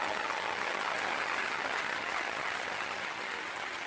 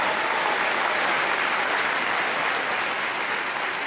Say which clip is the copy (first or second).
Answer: first